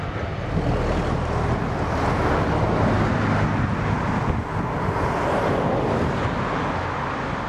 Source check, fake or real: real